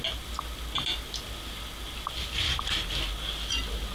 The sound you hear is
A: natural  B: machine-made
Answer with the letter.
A